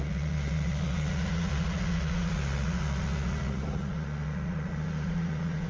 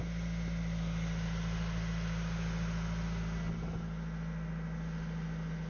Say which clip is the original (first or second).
second